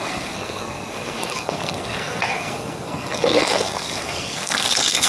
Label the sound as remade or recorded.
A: remade